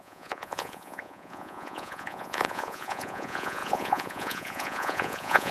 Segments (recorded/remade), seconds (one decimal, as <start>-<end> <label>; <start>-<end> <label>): 0.0-5.5 remade